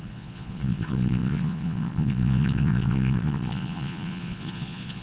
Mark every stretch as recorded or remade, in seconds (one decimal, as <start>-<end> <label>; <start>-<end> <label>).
0.0-5.0 remade